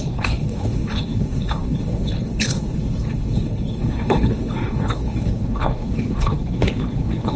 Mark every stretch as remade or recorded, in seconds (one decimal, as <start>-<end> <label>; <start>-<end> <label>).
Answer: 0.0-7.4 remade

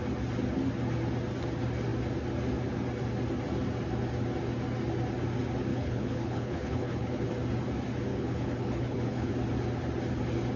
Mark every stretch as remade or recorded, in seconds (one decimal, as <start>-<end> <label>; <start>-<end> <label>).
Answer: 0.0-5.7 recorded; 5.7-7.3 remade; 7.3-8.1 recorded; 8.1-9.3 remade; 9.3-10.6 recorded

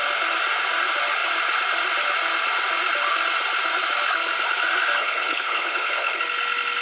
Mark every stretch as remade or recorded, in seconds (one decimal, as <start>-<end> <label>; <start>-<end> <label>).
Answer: 0.0-5.0 recorded; 5.0-6.2 remade; 6.2-6.8 recorded